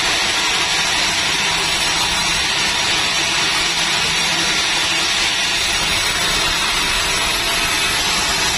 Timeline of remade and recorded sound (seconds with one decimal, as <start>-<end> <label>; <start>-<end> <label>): 0.0-8.6 recorded